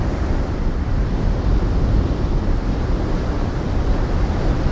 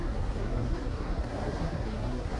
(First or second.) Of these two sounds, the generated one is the second